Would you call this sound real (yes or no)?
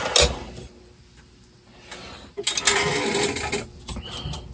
yes